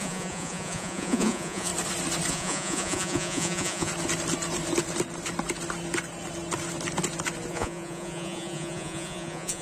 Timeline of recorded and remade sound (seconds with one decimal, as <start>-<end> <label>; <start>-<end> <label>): 0.0-1.7 remade; 1.7-2.3 recorded; 2.3-3.9 remade; 3.9-7.5 recorded; 7.5-9.6 remade